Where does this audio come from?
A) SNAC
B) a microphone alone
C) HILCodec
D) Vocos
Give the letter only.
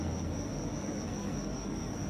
A